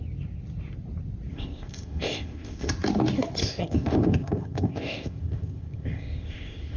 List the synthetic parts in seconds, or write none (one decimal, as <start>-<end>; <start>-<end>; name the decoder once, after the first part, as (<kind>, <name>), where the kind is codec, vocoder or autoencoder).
1.3-2.7 (codec, ZipCodec); 3.4-6.8